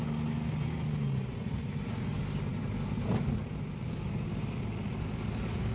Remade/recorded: recorded